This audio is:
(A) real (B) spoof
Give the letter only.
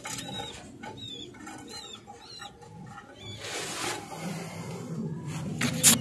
A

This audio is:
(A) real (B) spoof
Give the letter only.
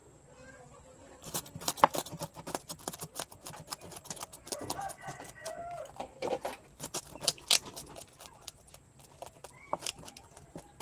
A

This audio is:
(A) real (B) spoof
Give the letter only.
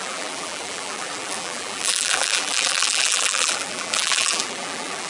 B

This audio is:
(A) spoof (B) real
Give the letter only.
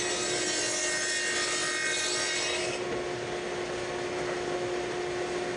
B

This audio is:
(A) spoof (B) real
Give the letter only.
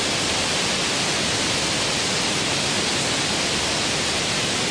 B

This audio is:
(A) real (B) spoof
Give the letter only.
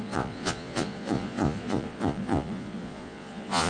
B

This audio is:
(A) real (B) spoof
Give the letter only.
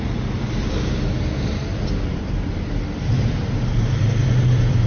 B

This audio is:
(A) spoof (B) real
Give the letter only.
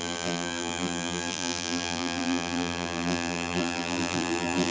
A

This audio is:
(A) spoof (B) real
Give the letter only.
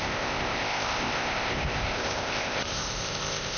A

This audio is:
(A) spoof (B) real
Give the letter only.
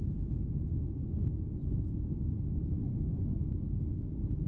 B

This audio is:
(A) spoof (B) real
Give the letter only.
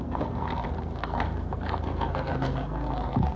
A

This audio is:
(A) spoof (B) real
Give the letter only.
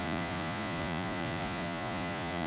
A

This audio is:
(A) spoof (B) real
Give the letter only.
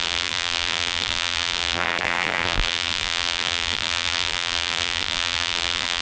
A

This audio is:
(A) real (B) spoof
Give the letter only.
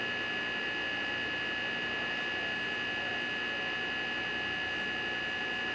A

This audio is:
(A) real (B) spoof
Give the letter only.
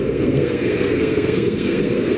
B